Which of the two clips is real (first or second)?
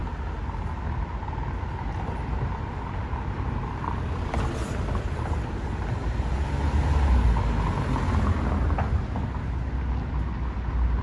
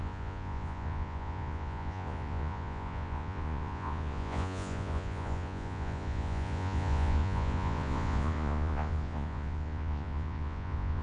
first